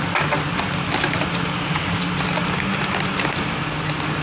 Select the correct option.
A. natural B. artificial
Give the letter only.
A